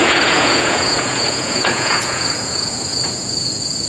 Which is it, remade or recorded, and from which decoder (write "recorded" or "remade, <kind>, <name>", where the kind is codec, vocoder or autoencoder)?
remade, vocoder, Vocos